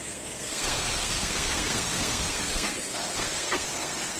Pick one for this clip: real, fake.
fake